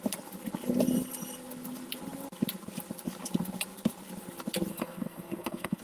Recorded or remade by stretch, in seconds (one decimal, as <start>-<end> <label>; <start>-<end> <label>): 0.0-4.7 recorded; 4.7-5.8 remade